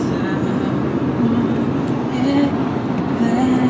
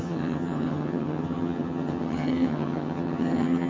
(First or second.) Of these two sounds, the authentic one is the first